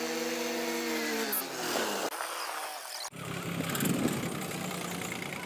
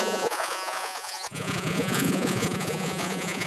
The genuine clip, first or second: first